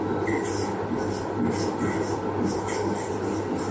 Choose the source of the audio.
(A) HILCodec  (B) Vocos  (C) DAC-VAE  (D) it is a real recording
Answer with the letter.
D